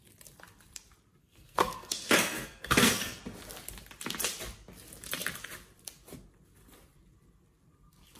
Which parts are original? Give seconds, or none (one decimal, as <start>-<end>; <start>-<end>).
0.0-1.2; 3.2-8.2